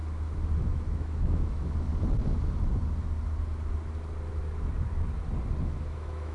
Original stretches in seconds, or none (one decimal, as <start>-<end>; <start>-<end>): 0.0-0.6; 1.9-5.6